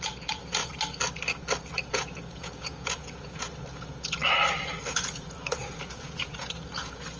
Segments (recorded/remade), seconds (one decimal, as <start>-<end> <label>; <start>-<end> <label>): 0.0-0.6 remade; 0.6-1.9 recorded; 1.9-4.2 remade; 4.2-5.0 recorded; 5.0-7.2 remade